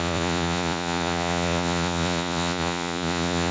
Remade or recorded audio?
remade